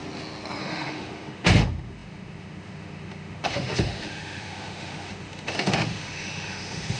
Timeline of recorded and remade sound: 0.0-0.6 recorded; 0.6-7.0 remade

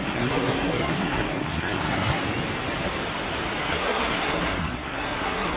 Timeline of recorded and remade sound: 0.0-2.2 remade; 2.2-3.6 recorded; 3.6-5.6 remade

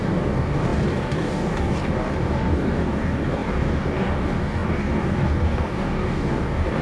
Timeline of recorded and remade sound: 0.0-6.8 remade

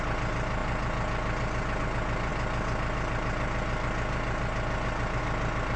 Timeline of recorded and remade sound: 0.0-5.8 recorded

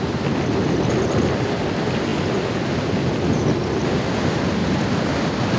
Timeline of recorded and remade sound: 0.0-4.6 recorded; 4.6-5.6 remade

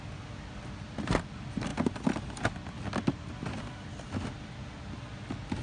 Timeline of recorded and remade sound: 0.0-5.6 recorded

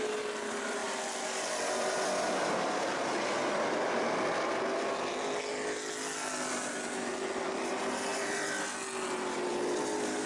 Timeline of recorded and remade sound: 0.0-10.3 recorded

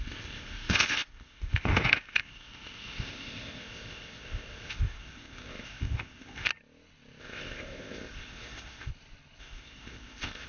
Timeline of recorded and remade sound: 0.0-6.5 remade; 6.5-7.2 recorded; 7.2-8.9 remade; 8.9-9.4 recorded; 9.4-10.5 remade